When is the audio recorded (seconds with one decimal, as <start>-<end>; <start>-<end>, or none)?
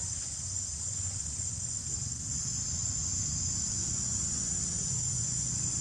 none